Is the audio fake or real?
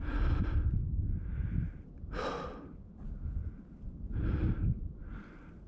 real